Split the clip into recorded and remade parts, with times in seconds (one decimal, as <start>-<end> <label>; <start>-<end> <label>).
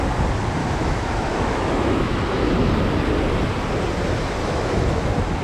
0.0-0.6 recorded; 0.6-2.5 remade; 2.5-4.4 recorded; 4.4-5.0 remade; 5.0-5.4 recorded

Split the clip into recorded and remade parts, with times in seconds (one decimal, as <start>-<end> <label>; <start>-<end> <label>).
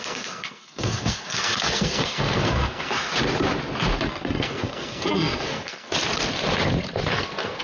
0.0-3.1 remade; 3.1-4.1 recorded; 4.1-5.9 remade; 5.9-7.1 recorded; 7.1-7.6 remade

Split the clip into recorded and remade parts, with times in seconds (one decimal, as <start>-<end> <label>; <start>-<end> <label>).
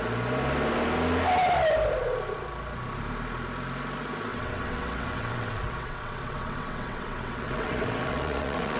0.0-4.3 recorded; 4.3-8.8 remade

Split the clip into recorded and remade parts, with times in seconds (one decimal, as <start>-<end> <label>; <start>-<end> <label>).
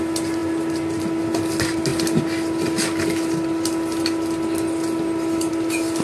0.0-6.0 recorded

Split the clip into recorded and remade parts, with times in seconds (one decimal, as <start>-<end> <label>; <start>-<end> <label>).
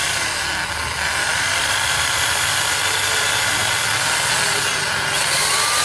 0.0-5.8 recorded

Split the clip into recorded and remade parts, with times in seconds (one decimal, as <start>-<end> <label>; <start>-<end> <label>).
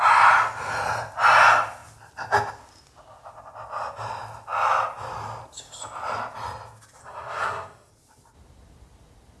0.0-7.0 recorded; 7.0-7.9 remade; 7.9-9.4 recorded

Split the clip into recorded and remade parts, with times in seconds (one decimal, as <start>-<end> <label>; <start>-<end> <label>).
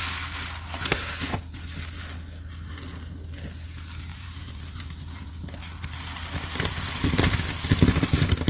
0.0-4.1 recorded; 4.1-5.3 remade; 5.3-8.5 recorded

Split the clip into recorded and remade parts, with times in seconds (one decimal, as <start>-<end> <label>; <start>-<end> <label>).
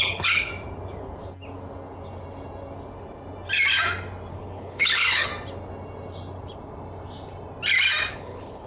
0.0-0.5 remade; 0.5-4.3 recorded; 4.3-5.3 remade; 5.3-8.1 recorded; 8.1-8.7 remade